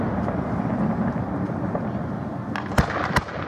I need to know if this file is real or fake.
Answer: real